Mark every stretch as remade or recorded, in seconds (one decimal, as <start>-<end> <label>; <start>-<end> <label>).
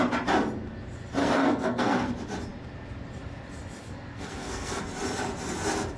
0.0-1.2 recorded; 1.2-2.1 remade; 2.1-3.8 recorded; 3.8-4.8 remade; 4.8-6.0 recorded